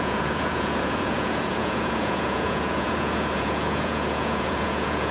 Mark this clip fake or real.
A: fake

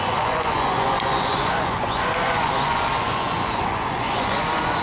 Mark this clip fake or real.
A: fake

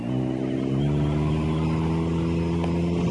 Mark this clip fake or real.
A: real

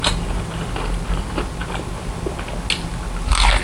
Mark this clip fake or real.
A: real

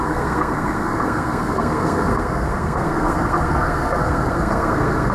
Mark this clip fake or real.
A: fake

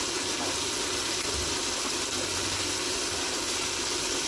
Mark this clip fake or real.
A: fake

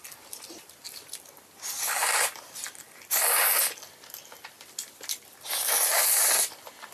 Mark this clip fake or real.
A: real